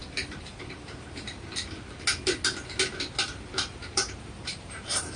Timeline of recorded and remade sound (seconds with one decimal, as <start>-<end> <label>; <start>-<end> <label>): 0.0-1.5 remade; 1.5-3.5 recorded; 3.5-5.2 remade